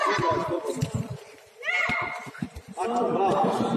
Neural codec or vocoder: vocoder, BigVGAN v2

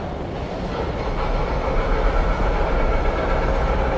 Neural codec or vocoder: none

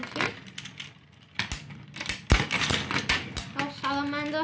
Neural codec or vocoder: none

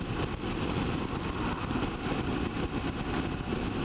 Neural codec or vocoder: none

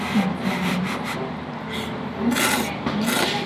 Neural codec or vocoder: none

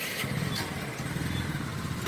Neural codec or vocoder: vocoder, BigVGAN v2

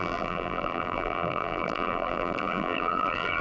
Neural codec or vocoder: vocoder, BigVGAN v2